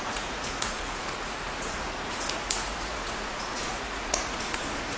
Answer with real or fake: fake